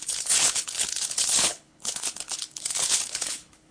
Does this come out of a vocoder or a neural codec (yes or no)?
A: yes